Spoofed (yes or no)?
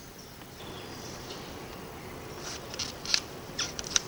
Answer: yes